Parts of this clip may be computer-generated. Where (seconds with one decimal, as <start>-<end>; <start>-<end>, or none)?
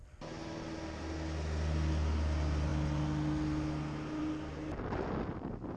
none